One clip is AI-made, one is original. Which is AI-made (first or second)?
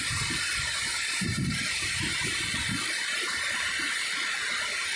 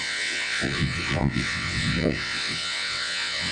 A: second